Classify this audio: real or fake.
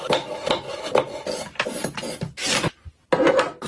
real